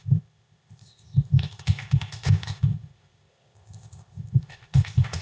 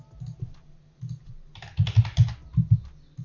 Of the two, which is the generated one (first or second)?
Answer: first